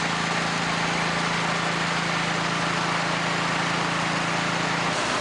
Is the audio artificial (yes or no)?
no